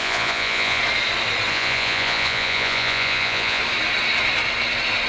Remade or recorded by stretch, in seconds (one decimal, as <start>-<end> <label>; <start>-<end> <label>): 0.0-0.8 remade; 0.8-1.5 recorded; 1.5-3.6 remade; 3.6-5.1 recorded